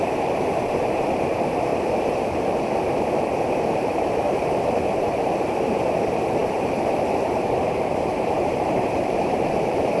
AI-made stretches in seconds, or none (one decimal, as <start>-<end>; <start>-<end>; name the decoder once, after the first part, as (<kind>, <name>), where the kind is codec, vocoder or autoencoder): 0.0-1.7 (vocoder, BigVGAN v2); 3.0-10.0